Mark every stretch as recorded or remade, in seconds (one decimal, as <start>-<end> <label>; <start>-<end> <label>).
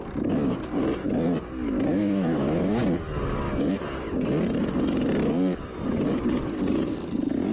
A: 0.0-1.9 recorded; 1.9-2.8 remade; 2.8-7.5 recorded